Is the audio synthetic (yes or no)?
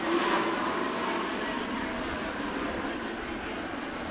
no